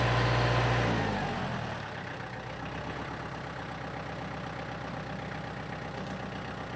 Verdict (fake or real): real